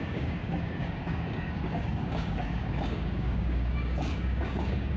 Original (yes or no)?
no